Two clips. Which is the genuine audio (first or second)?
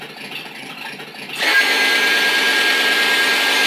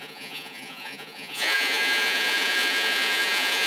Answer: first